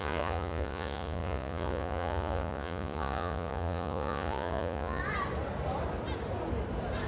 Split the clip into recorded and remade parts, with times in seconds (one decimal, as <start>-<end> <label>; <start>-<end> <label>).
0.0-5.0 remade; 5.0-7.1 recorded